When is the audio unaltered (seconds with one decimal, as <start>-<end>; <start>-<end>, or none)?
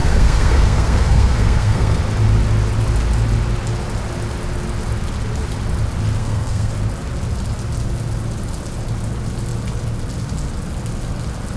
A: 2.0-6.2; 6.7-11.6